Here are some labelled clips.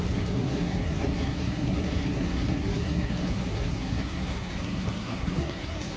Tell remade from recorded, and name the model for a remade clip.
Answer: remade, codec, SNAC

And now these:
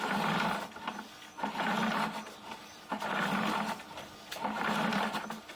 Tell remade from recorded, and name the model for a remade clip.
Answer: recorded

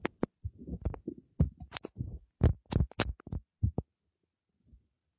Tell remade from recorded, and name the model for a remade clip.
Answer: recorded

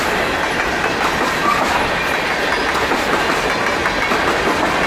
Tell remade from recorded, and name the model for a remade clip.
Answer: recorded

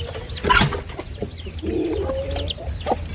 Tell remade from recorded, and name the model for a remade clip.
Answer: recorded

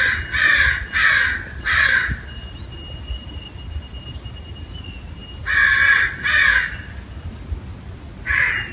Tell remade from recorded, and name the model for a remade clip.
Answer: recorded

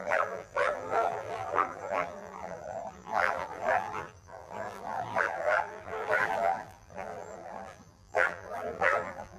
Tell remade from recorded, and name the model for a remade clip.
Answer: remade, vocoder, BigVGAN v2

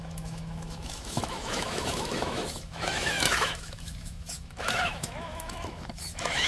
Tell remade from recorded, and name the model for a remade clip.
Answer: remade, autoencoder, DAC-VAE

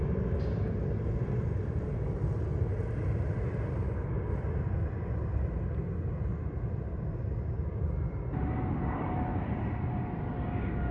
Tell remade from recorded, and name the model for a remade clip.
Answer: recorded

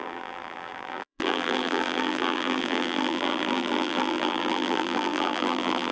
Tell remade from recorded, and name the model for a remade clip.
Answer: remade, vocoder, BigVGAN v2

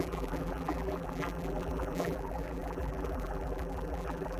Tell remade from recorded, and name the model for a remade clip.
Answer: remade, vocoder, BigVGAN v2